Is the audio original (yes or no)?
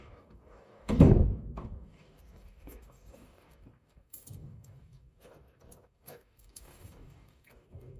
no